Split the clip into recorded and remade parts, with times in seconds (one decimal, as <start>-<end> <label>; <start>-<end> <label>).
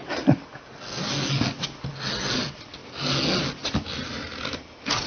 0.0-5.1 recorded